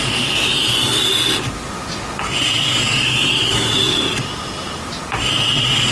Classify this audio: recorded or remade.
recorded